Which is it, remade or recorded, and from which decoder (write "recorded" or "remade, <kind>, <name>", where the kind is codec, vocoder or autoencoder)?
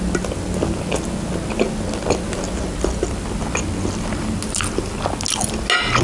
recorded